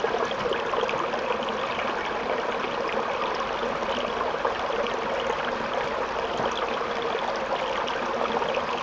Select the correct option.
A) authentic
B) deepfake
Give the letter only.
A